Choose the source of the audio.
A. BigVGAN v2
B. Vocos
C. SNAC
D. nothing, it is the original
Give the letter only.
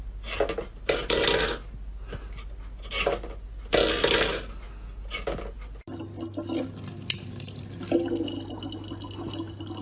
D